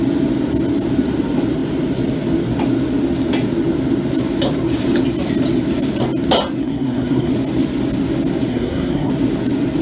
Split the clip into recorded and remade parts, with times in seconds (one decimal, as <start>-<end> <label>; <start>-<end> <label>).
0.0-6.6 recorded; 6.6-7.3 remade; 7.3-8.5 recorded; 8.5-9.1 remade; 9.1-9.8 recorded